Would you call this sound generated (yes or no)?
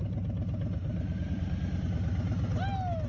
no